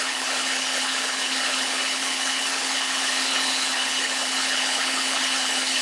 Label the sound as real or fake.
fake